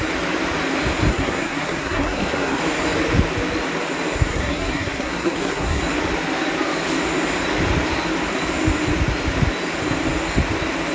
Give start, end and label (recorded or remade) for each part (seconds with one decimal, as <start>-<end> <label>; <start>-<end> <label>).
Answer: 0.0-1.1 recorded; 1.1-2.6 remade; 2.6-4.3 recorded; 4.3-5.8 remade; 5.8-10.9 recorded